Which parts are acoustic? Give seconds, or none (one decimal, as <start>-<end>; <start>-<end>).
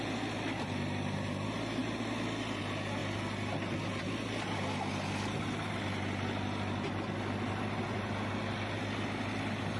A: 0.0-9.8